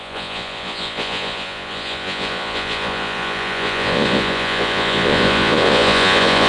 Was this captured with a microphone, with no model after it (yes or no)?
no